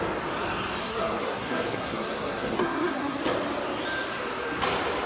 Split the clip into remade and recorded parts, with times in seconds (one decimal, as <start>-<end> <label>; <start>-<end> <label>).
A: 0.0-0.8 recorded; 0.8-3.2 remade; 3.2-5.1 recorded